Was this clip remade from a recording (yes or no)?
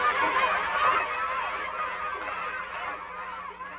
no